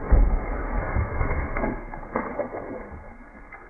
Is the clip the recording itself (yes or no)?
no